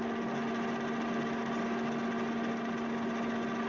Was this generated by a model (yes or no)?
no